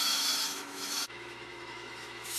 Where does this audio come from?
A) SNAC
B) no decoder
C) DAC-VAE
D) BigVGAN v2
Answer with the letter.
C